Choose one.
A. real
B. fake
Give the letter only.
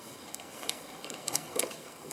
B